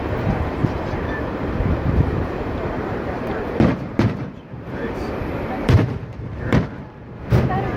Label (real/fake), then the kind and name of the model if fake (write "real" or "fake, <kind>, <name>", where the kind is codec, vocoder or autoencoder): fake, vocoder, BigVGAN v2